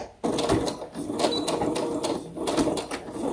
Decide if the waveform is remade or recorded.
recorded